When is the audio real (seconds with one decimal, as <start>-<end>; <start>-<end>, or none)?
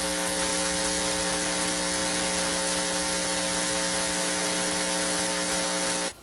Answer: 0.0-6.2